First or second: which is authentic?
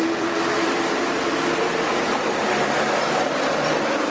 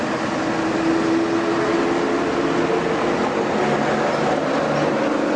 second